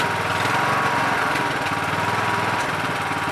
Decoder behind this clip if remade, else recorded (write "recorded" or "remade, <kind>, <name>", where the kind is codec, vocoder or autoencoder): recorded